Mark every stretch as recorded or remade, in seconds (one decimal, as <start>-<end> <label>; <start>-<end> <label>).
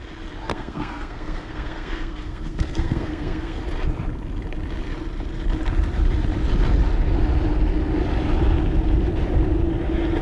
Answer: 0.0-0.5 recorded; 0.5-3.6 remade; 3.6-10.2 recorded